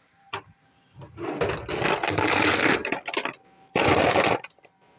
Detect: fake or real real